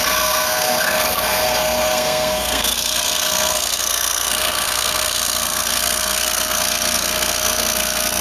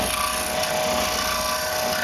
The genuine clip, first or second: second